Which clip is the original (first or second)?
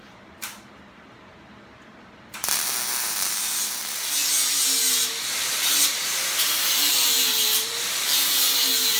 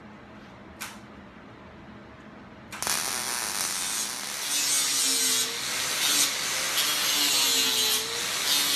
second